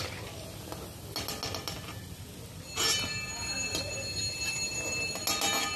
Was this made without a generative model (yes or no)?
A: yes